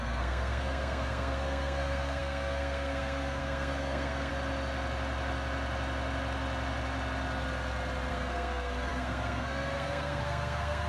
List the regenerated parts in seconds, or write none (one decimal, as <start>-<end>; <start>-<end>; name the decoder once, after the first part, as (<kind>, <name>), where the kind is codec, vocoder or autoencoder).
0.0-4.3 (codec, SNAC); 8.1-10.9